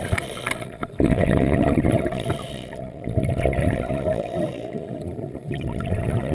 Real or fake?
fake